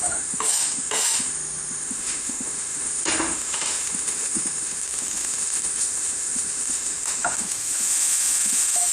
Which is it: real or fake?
fake